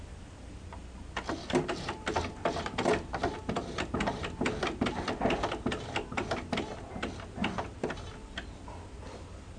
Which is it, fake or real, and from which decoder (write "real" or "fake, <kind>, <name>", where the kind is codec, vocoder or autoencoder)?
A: real